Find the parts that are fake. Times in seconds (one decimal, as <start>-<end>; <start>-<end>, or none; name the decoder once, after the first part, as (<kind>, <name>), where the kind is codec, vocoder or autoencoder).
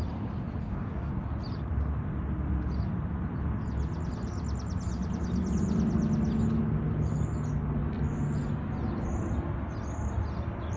0.6-1.1 (codec, DAC)